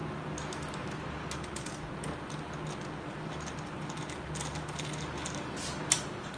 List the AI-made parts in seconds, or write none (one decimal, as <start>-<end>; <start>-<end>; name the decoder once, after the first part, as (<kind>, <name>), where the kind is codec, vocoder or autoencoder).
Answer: none